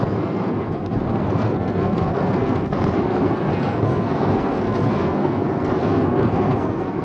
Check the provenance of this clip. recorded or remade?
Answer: remade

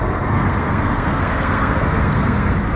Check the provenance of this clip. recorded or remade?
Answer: remade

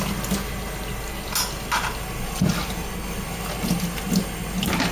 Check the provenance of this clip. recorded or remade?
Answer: recorded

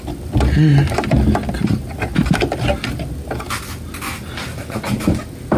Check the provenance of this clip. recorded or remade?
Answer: recorded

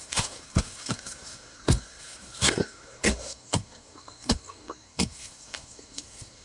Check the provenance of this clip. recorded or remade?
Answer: remade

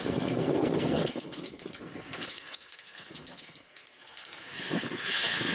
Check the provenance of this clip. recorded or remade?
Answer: remade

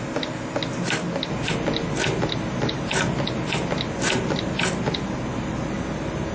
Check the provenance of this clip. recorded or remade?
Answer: recorded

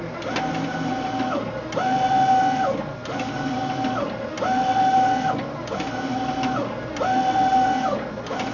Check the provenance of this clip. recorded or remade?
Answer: recorded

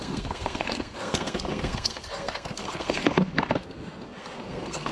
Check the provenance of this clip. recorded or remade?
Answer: remade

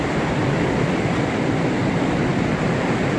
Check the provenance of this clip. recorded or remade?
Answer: recorded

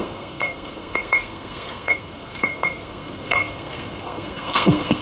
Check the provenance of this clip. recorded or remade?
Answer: remade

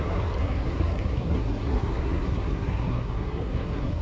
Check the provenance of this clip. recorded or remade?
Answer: remade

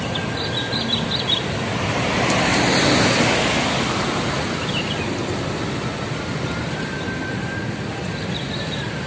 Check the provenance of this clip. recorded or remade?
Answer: recorded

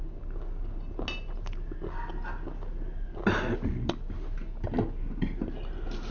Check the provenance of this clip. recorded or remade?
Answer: recorded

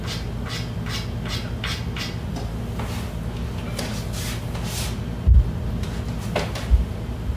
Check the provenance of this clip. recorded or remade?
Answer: recorded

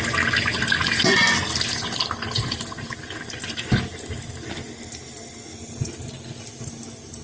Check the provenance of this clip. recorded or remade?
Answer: recorded